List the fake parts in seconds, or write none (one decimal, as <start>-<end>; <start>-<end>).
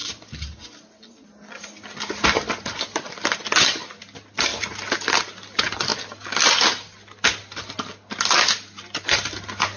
none